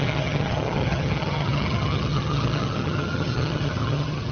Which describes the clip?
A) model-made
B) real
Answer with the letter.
A